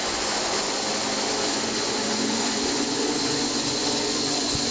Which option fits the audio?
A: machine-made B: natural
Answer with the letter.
A